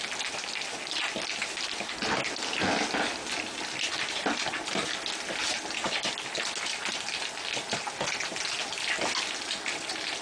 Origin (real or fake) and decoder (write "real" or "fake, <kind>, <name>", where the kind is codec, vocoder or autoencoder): real